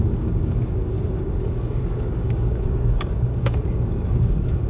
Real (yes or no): no